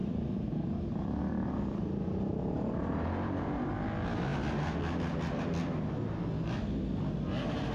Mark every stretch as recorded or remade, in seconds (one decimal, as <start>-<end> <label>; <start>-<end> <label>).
0.0-2.3 recorded; 2.3-3.7 remade; 3.7-7.7 recorded